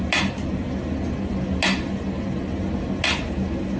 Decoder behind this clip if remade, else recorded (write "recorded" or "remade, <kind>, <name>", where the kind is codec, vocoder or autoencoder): recorded